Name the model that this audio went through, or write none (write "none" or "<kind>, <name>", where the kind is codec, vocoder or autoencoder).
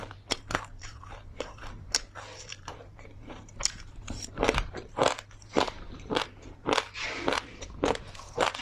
vocoder, BigVGAN v2